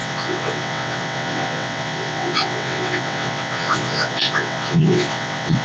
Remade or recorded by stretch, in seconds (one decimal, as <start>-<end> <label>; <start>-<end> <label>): 0.0-5.6 remade